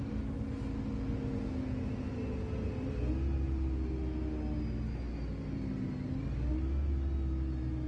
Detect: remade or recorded recorded